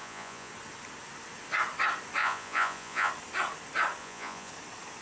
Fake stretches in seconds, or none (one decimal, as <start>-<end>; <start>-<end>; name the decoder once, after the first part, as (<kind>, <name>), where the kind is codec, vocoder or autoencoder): 0.0-0.5 (vocoder, Vocos); 2.2-3.1; 4.0-4.5